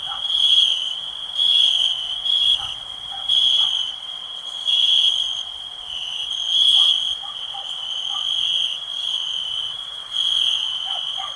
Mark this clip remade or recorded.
remade